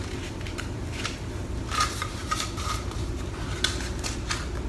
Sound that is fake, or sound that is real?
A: real